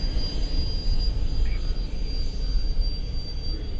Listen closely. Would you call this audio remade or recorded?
recorded